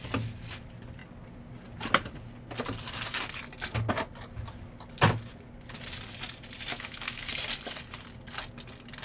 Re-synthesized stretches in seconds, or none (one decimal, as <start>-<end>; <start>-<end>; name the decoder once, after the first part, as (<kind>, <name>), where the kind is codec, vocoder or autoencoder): 6.7-7.3 (autoencoder, DAC-VAE)